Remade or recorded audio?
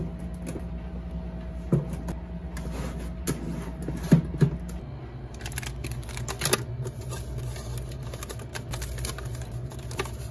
recorded